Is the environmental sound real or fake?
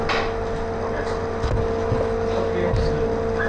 real